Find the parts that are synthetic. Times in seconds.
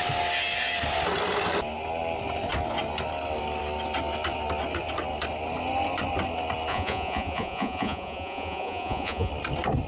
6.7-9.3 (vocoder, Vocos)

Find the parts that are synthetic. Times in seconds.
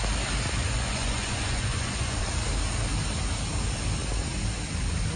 0.6-2.2 (vocoder, Vocos)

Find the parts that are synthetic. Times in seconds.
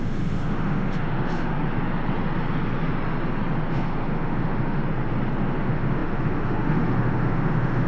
0.0-1.5 (autoencoder, DAC-VAE); 3.7-4.8; 5.4-7.9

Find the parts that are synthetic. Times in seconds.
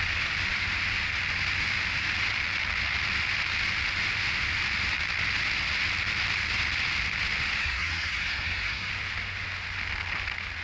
7.6-8.9 (codec, SNAC)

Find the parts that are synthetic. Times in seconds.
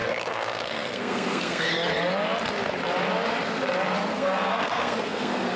0.0-1.7 (codec, SNAC); 4.1-5.6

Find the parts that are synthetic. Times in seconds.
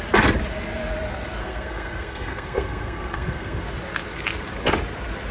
1.4-3.6 (codec, SNAC)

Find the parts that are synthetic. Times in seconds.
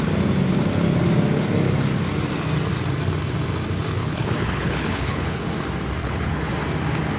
4.0-5.5 (codec, HILCodec); 6.0-6.5